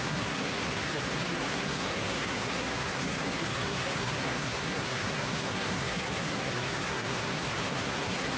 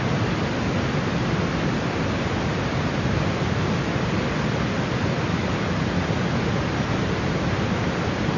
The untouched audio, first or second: second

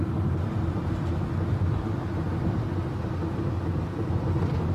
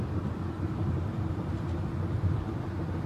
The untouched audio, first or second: first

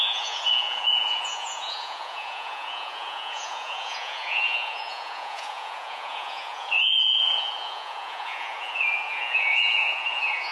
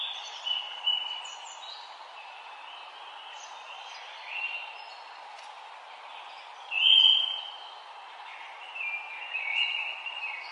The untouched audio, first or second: second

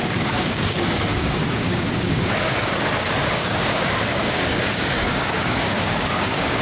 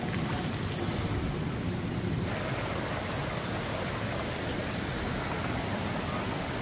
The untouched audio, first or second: second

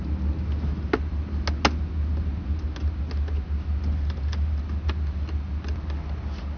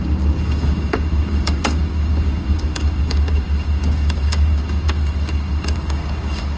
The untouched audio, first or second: first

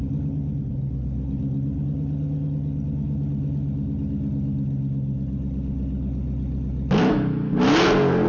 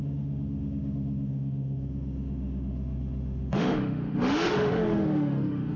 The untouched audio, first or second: first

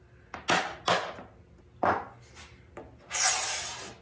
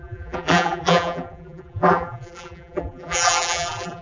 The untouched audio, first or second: first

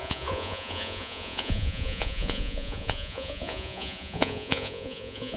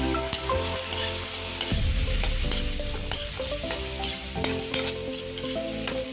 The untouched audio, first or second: second